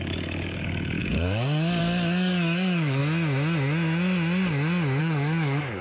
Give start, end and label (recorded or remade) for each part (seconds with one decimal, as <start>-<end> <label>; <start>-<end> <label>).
0.0-3.0 remade; 3.0-5.0 recorded; 5.0-5.8 remade